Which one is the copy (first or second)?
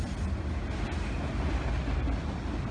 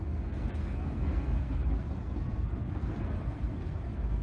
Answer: second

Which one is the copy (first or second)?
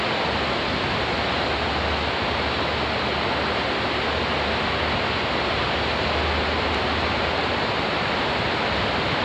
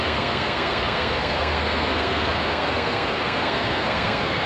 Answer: second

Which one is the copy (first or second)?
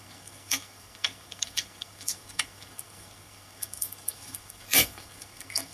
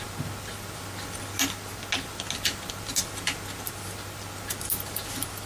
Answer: first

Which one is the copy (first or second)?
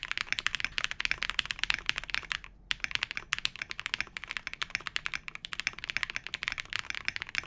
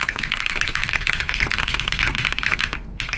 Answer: second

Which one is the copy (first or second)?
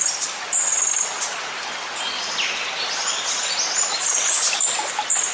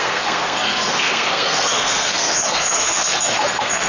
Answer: second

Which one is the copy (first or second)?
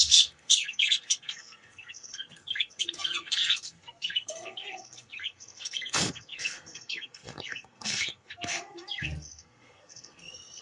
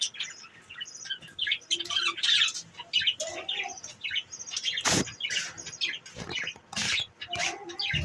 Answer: first